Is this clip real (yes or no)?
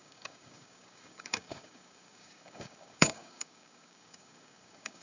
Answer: no